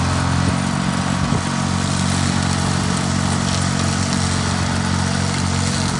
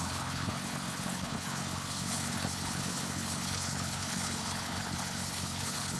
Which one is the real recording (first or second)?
first